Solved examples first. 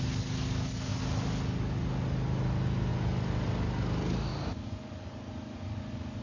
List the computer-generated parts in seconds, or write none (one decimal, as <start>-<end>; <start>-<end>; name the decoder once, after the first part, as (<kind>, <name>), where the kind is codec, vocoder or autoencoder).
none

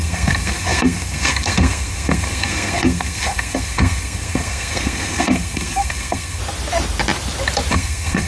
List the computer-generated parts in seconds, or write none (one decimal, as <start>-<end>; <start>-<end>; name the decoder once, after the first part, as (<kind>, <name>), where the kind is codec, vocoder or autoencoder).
0.0-6.4 (codec, SNAC); 7.7-8.3

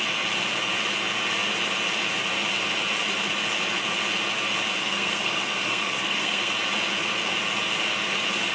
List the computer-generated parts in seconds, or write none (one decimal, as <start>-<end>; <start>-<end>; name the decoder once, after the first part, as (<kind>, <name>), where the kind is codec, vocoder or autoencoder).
4.8-6.5 (codec, SNAC)